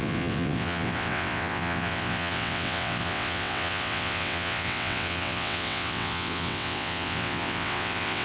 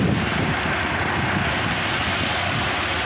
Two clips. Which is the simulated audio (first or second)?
first